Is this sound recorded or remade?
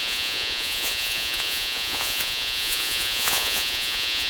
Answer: remade